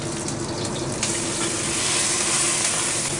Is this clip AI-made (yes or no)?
no